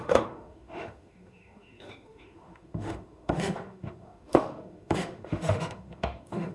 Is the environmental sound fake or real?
fake